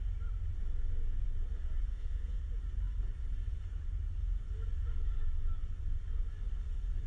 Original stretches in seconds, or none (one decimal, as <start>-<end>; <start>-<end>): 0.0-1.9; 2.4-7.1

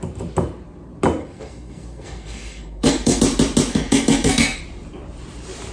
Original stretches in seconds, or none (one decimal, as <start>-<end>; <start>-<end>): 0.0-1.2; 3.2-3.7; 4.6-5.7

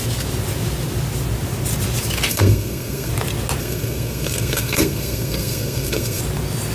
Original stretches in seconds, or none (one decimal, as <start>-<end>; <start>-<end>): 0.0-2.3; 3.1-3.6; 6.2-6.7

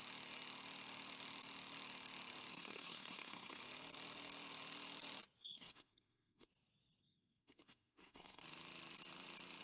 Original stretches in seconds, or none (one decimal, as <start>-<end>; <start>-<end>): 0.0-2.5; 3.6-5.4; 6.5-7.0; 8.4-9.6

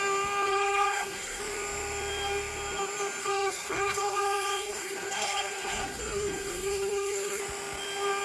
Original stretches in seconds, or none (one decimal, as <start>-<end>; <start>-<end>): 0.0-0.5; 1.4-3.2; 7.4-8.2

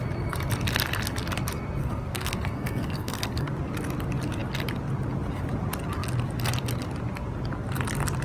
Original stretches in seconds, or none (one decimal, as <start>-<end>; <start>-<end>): 0.0-1.8; 3.5-8.2